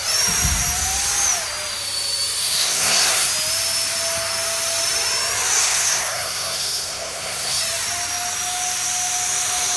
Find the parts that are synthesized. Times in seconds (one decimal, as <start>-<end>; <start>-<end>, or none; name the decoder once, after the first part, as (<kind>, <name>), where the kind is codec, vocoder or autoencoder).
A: 2.4-3.3 (codec, SNAC); 5.6-7.6